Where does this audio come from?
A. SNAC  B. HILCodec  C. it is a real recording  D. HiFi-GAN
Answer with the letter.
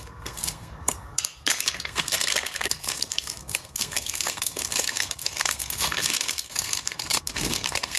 A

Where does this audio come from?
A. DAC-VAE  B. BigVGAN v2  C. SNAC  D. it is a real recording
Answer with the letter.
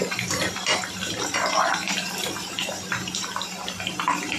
B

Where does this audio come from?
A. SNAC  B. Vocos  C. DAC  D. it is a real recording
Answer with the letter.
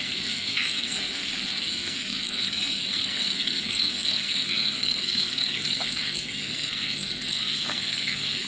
A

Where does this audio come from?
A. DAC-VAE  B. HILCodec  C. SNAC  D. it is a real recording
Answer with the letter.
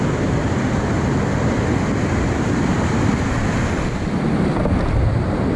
D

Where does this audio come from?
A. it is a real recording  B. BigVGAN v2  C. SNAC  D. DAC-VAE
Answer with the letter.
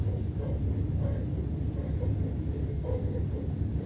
A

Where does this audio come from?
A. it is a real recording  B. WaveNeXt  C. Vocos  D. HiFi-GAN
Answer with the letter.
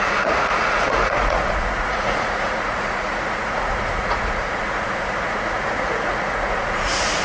C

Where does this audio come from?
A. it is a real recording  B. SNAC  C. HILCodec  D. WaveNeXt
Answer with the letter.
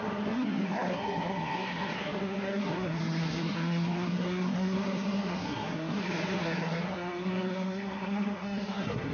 B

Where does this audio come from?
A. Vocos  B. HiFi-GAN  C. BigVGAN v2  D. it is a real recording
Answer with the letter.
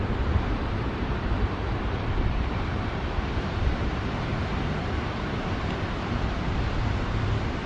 C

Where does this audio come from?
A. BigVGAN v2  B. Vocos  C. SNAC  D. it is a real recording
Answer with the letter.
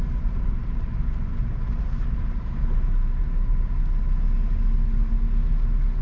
D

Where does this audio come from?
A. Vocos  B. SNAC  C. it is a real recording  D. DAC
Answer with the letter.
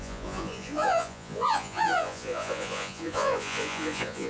A